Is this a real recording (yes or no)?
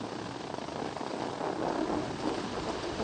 yes